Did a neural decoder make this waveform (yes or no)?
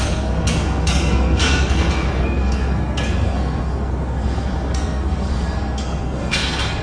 yes